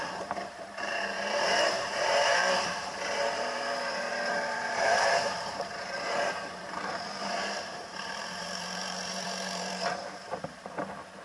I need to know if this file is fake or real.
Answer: fake